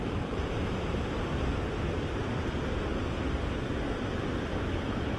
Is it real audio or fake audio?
real